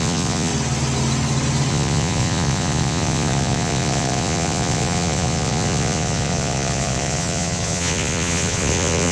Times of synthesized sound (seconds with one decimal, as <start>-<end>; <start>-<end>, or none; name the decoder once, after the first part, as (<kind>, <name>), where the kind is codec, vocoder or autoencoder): 0.0-0.5 (vocoder, Vocos); 1.7-9.1